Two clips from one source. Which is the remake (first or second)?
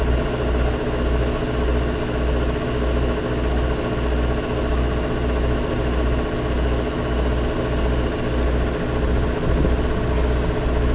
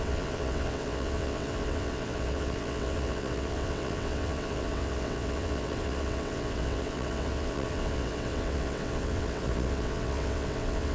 second